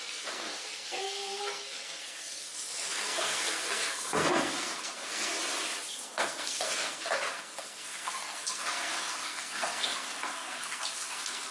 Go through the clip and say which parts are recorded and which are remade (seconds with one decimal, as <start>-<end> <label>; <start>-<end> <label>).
0.0-5.3 remade; 5.3-5.9 recorded; 5.9-11.5 remade